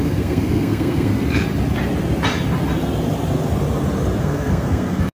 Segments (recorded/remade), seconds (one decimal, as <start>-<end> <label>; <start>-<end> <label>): 0.0-1.1 remade; 1.1-4.2 recorded; 4.2-5.1 remade

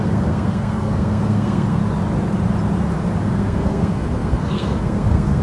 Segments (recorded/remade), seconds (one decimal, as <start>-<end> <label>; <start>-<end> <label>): 0.0-1.8 remade; 1.8-3.2 recorded; 3.2-5.4 remade

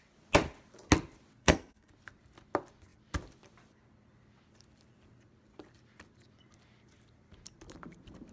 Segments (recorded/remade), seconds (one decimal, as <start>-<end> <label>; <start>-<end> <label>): 0.0-1.4 recorded; 1.4-1.9 remade; 1.9-8.3 recorded

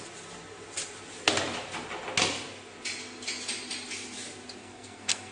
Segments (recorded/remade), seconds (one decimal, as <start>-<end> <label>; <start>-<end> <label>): 0.0-4.6 recorded; 4.6-5.3 remade

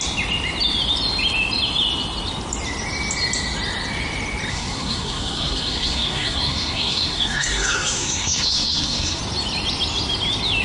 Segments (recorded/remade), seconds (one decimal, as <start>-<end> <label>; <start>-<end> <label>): 0.0-4.5 recorded; 4.5-9.2 remade; 9.2-10.6 recorded

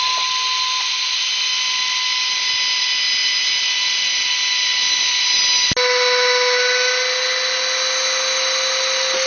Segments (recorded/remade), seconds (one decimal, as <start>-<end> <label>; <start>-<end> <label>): 0.0-9.3 recorded

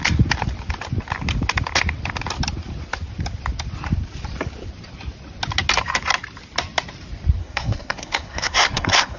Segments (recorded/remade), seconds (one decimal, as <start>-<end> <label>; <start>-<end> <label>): 0.0-7.4 recorded; 7.4-9.2 remade